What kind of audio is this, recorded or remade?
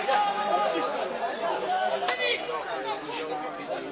recorded